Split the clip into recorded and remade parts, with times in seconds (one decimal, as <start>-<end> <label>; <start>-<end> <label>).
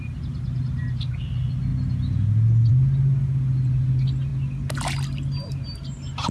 0.0-6.3 recorded